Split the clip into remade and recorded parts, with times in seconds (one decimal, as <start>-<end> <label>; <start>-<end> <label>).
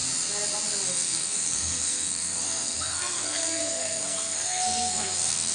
0.0-0.9 recorded; 0.9-5.5 remade